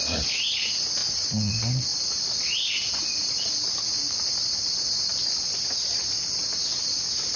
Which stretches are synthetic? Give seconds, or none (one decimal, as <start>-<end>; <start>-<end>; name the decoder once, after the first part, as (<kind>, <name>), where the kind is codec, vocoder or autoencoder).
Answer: 1.0-1.5 (vocoder, Vocos)